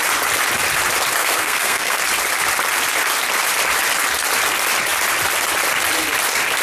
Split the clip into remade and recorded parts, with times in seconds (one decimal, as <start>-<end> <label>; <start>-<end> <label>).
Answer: 0.0-1.2 recorded; 1.2-2.0 remade; 2.0-6.6 recorded